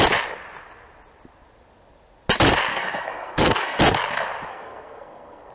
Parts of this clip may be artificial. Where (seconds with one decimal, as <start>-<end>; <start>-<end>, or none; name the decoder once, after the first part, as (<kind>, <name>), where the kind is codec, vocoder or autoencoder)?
2.7-3.8 (codec, SNAC); 4.5-5.5